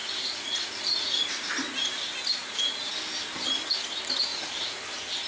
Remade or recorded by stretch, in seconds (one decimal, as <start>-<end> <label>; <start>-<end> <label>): 0.0-1.5 remade; 1.5-2.4 recorded; 2.4-2.9 remade; 2.9-4.3 recorded; 4.3-4.8 remade; 4.8-5.3 recorded